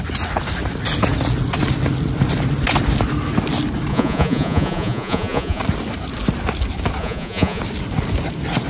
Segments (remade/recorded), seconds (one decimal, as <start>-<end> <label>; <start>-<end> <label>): 0.0-3.9 recorded; 3.9-5.6 remade; 5.6-7.0 recorded; 7.0-7.6 remade; 7.6-8.7 recorded